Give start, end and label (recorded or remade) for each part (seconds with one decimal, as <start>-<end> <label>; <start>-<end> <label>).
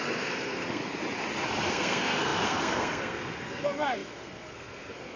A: 0.0-0.8 remade; 0.8-1.7 recorded; 1.7-5.2 remade